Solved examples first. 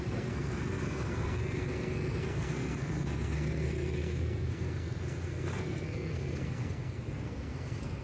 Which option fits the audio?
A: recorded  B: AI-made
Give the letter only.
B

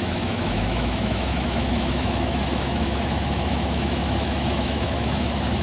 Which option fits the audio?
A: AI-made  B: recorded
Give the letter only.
A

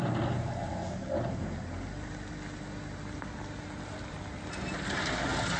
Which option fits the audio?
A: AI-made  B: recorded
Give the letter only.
B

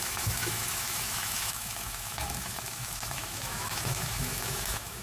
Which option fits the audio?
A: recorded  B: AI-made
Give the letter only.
B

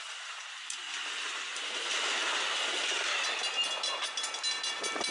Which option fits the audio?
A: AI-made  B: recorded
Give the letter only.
B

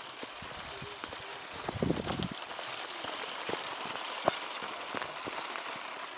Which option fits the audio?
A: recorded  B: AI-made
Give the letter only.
A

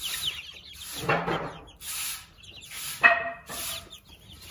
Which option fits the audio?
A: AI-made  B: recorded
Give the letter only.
B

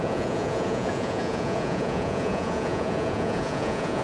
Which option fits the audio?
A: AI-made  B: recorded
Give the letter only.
A